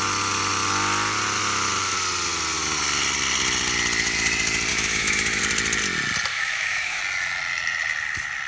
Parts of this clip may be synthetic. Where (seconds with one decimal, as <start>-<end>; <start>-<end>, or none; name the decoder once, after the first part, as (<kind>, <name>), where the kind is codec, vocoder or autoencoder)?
4.7-5.4 (autoencoder, DAC-VAE); 6.3-7.0